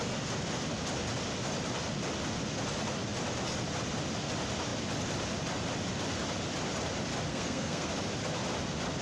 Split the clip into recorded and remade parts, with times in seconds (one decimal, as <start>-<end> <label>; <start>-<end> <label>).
0.0-7.3 recorded; 7.3-7.9 remade; 7.9-9.0 recorded